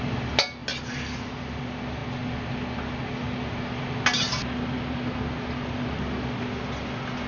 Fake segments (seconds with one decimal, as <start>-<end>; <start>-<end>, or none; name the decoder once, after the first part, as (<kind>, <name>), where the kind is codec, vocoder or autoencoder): none